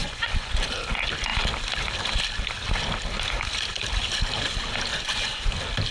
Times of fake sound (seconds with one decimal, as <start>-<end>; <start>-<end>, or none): 0.0-0.5; 4.9-5.5